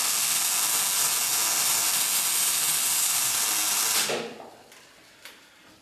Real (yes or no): yes